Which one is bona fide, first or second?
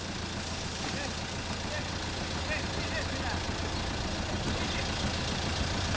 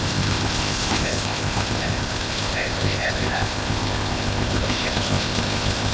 first